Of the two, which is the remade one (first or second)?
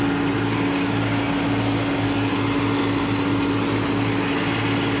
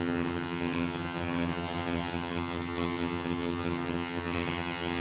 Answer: second